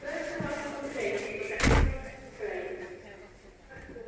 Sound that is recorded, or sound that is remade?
recorded